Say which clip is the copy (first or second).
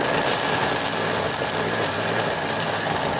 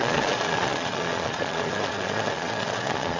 second